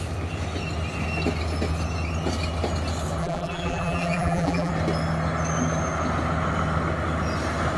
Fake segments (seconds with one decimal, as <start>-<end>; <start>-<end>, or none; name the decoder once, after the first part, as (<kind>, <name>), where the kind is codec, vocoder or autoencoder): 3.2-4.7 (vocoder, BigVGAN v2)